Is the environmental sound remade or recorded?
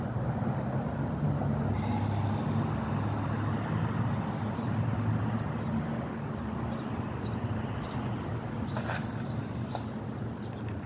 recorded